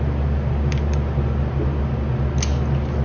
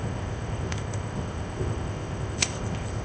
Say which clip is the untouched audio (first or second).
first